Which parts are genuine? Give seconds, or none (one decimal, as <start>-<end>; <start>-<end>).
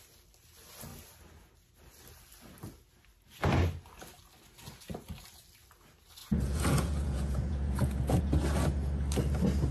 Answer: 0.0-6.2; 8.2-9.7